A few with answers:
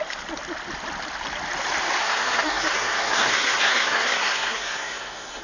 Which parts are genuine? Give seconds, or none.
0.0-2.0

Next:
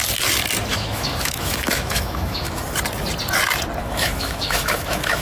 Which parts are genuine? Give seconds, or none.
0.0-0.7; 2.6-3.8

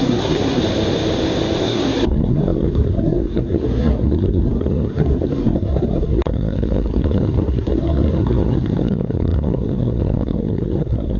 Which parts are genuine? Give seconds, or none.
0.6-1.6

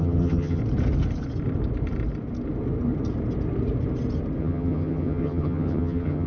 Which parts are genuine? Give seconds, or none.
0.6-4.4

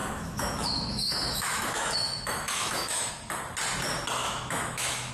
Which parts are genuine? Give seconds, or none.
3.1-4.2

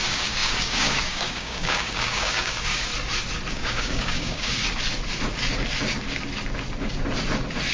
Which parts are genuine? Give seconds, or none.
2.9-3.5; 4.6-7.7

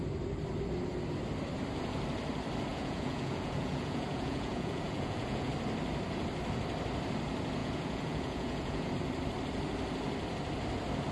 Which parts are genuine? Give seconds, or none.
0.0-2.7; 5.5-7.6; 8.9-11.1

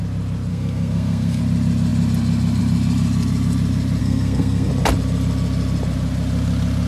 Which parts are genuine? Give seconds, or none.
0.0-0.5; 1.4-4.0; 4.7-6.9